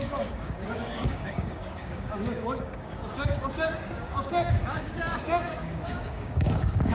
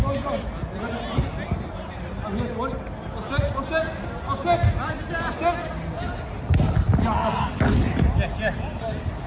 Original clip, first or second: second